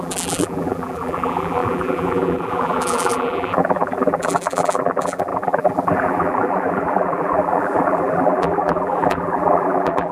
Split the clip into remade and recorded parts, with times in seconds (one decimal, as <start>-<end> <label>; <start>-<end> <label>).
0.0-10.1 remade